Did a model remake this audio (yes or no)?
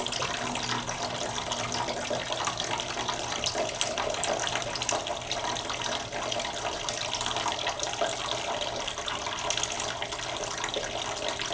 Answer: no